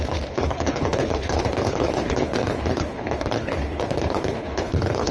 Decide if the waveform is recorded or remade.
remade